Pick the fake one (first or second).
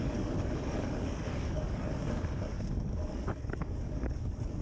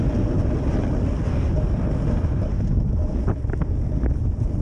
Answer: first